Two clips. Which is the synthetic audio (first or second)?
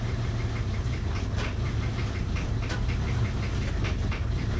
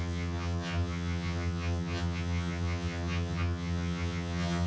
second